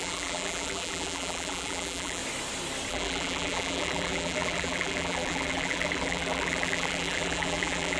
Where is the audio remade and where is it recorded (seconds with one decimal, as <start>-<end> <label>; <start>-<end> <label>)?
0.0-2.2 remade; 2.2-2.9 recorded; 2.9-8.0 remade

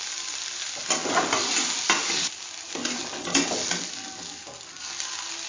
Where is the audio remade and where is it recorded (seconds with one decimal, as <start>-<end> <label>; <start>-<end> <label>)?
0.0-5.5 recorded

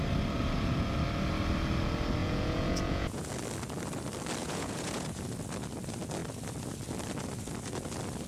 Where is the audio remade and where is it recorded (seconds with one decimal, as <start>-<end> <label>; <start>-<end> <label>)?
0.0-2.2 recorded; 2.2-3.3 remade; 3.3-4.4 recorded; 4.4-5.2 remade; 5.2-8.3 recorded

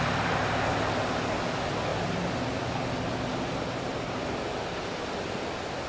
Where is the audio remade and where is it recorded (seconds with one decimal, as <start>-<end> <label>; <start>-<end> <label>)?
0.0-1.9 recorded; 1.9-2.8 remade; 2.8-5.9 recorded